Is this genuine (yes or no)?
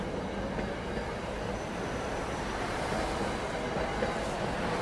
yes